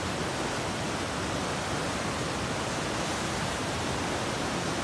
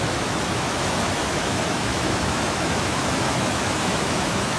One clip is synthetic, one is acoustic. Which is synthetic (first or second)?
second